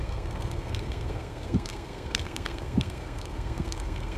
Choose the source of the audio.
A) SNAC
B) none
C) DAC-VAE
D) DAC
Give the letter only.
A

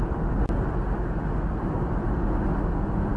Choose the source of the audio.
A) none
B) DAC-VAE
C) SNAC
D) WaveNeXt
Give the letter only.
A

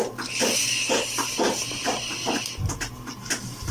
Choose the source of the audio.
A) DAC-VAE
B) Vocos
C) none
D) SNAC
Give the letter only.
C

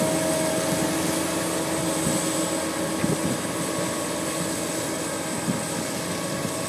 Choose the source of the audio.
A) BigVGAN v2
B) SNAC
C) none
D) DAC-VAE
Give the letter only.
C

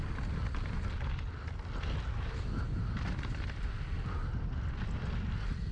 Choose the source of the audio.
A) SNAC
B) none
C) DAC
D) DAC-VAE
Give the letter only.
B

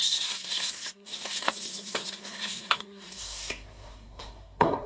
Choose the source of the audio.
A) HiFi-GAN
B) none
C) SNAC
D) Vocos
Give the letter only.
C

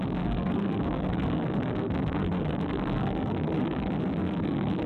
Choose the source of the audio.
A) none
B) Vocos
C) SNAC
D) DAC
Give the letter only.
C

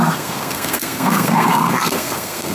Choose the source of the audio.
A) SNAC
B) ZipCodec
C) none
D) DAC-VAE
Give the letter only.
A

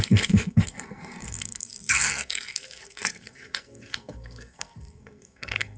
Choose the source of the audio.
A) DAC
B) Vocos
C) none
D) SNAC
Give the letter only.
D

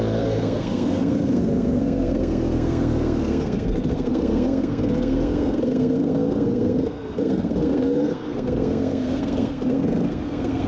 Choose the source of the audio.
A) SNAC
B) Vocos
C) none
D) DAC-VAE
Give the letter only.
A